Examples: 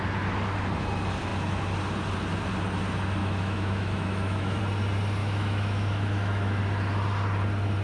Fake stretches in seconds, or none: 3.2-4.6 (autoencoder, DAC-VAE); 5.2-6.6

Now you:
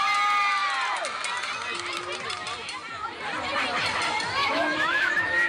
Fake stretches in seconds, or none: 4.4-5.5 (autoencoder, DAC-VAE)

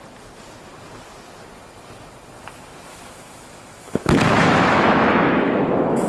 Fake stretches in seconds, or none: 2.9-6.1 (autoencoder, DAC-VAE)

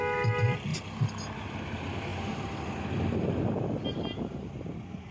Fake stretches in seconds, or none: none

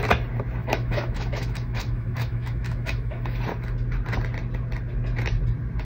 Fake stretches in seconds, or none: 0.6-3.4 (autoencoder, DAC-VAE)